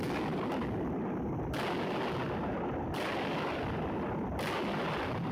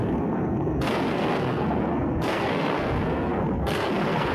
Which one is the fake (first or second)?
second